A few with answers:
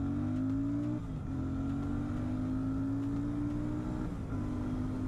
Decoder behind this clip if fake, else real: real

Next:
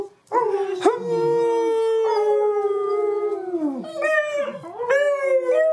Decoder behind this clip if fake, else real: real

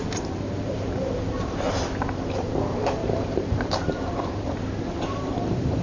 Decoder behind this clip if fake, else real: fake, vocoder, BigVGAN v2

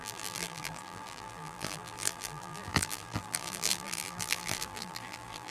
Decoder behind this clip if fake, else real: fake, vocoder, BigVGAN v2